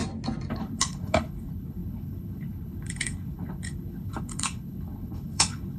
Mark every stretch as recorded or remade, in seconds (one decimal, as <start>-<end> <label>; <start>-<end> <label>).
0.0-0.5 recorded; 0.5-5.8 remade